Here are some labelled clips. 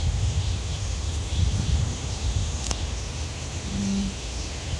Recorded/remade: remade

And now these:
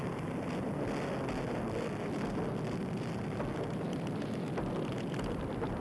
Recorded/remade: recorded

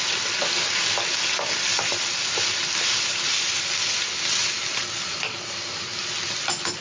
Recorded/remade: recorded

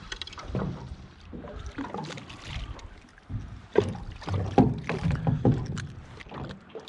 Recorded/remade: recorded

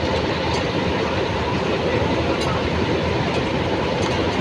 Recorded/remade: remade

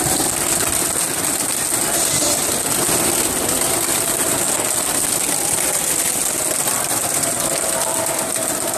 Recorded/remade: recorded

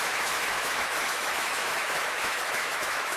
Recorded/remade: remade